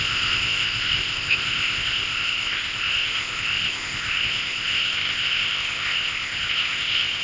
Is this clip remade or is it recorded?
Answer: remade